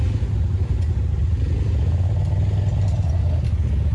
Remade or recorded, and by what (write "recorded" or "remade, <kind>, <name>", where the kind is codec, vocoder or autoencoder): recorded